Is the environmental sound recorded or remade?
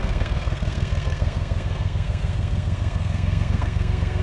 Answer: remade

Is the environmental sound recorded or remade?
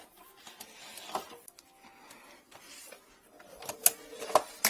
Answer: recorded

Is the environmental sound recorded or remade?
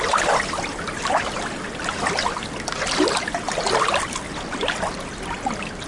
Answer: recorded